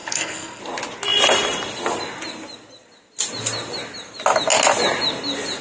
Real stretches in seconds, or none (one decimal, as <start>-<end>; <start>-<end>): 0.6-5.6